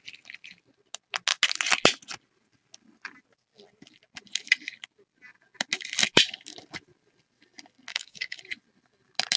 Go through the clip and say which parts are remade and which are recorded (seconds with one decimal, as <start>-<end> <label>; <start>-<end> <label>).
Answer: 0.0-7.9 recorded; 7.9-8.4 remade; 8.4-9.4 recorded